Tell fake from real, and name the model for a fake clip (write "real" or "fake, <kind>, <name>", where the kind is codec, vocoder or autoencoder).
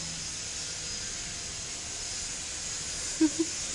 real